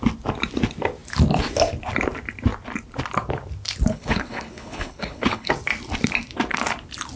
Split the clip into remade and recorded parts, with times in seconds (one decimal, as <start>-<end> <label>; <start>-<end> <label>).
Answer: 0.0-3.9 recorded; 3.9-5.5 remade; 5.5-7.2 recorded